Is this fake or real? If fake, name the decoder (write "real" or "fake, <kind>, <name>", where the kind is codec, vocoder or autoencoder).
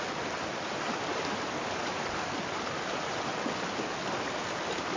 real